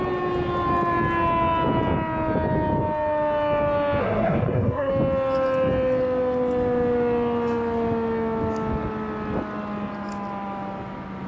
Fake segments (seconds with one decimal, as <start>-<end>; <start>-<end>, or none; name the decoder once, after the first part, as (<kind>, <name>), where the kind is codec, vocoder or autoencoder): 4.0-4.9 (codec, SNAC)